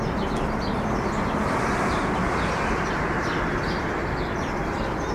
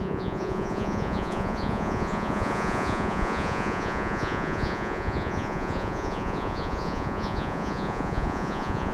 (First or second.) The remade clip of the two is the second